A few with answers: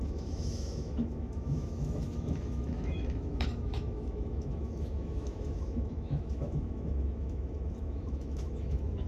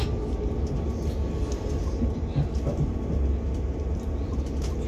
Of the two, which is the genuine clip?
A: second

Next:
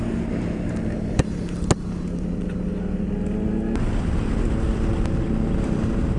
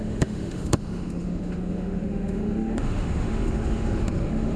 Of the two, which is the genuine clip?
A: first